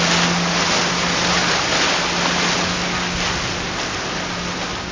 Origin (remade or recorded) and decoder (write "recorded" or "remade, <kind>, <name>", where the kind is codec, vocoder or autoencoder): recorded